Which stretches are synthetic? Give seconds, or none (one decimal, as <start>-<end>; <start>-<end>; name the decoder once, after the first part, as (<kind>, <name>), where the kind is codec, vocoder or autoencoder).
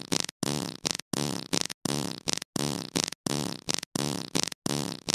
none